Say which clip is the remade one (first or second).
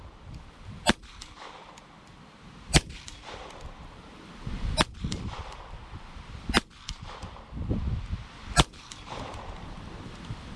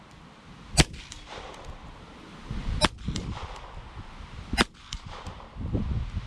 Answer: first